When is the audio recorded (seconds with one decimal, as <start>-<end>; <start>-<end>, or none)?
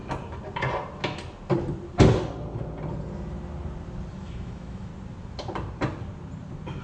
0.0-4.1; 4.9-6.8